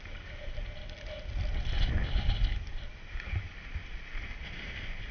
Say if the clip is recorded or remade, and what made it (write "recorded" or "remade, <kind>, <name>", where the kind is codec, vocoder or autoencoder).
recorded